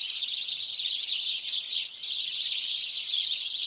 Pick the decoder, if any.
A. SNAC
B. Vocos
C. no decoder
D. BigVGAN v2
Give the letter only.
B